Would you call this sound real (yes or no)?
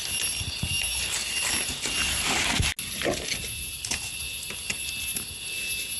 yes